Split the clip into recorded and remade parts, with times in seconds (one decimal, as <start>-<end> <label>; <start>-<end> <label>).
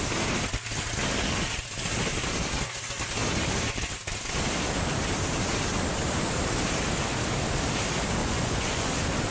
0.0-8.2 recorded; 8.2-8.9 remade; 8.9-9.3 recorded